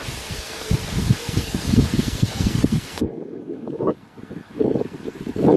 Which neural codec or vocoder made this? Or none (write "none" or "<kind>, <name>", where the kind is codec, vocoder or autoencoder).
codec, SNAC